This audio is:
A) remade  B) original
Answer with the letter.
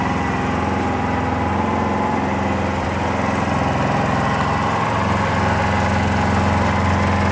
B